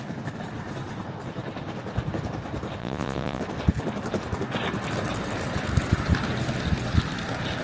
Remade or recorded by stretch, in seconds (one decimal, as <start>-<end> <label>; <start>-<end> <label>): 0.0-2.8 recorded; 2.8-3.4 remade; 3.4-7.6 recorded